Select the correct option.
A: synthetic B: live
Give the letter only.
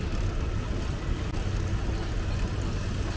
B